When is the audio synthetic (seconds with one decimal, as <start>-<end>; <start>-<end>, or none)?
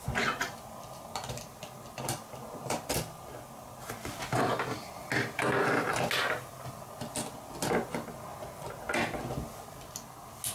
none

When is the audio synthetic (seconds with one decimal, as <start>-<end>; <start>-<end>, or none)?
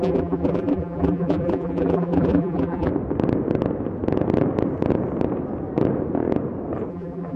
0.0-2.9; 6.9-7.4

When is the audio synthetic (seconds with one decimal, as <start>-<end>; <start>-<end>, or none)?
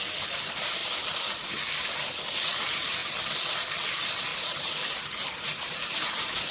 4.3-6.5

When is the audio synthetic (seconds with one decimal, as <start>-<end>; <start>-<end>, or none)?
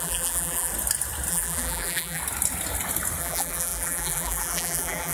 0.0-0.7; 1.3-2.2; 3.2-5.1